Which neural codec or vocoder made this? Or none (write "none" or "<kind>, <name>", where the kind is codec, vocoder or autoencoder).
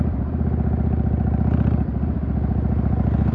none